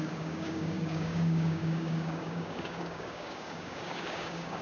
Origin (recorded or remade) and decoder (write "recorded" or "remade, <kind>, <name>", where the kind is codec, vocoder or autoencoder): remade, codec, DAC